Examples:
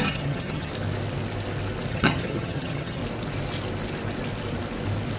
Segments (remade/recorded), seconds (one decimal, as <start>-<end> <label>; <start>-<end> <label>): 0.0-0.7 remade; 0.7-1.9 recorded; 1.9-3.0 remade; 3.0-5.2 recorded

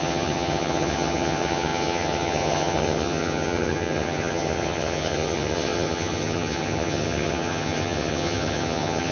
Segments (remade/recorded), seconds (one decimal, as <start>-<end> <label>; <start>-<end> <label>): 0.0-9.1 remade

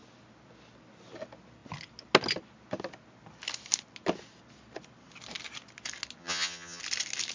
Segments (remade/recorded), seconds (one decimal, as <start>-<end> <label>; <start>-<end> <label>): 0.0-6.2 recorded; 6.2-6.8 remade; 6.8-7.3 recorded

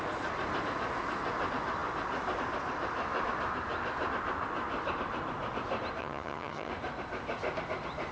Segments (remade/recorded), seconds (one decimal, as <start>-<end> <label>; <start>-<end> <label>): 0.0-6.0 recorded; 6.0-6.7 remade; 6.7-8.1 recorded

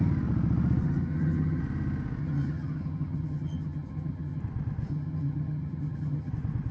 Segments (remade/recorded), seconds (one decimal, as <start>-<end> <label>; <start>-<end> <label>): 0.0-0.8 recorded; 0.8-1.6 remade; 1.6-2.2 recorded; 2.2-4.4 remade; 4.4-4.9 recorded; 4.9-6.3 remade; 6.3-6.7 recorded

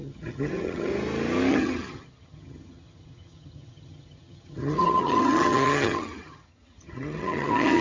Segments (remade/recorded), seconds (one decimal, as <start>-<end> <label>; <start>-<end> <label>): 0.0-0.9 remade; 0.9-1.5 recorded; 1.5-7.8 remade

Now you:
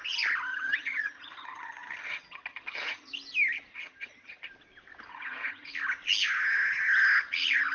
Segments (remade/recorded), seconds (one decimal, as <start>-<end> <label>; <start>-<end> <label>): 0.0-0.5 recorded; 0.5-3.1 remade; 3.1-3.7 recorded; 3.7-4.5 remade; 4.5-5.1 recorded; 5.1-5.7 remade; 5.7-7.7 recorded

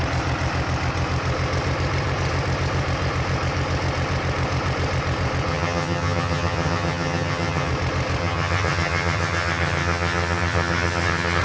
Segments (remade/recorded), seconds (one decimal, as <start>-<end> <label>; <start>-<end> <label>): 0.0-5.5 recorded; 5.5-7.7 remade; 7.7-8.2 recorded; 8.2-11.4 remade